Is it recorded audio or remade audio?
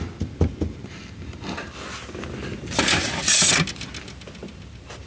recorded